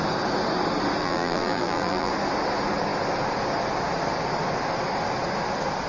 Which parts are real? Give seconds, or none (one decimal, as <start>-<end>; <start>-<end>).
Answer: 0.0-1.0; 2.1-5.9